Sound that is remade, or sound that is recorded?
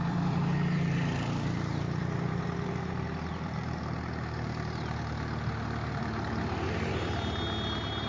remade